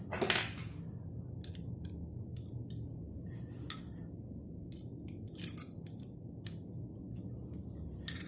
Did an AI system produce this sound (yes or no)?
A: no